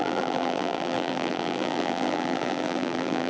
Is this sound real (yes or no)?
no